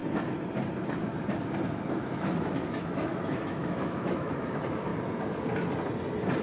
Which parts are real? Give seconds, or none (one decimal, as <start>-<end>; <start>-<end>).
0.0-1.9; 4.9-6.4